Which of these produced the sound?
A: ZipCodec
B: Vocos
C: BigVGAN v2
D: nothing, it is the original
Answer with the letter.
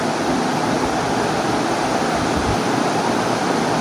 D